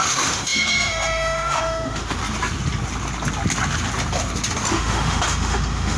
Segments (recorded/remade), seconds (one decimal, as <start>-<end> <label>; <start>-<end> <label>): 0.0-2.2 remade; 2.2-4.7 recorded; 4.7-6.0 remade